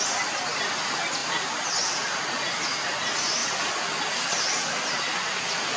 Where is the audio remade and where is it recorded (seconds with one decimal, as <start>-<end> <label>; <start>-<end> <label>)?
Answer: 0.0-5.8 recorded